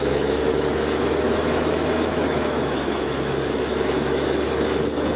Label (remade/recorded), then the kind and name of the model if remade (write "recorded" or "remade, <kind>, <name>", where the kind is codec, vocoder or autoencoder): remade, autoencoder, DAC-VAE